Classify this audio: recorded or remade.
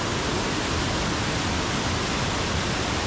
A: recorded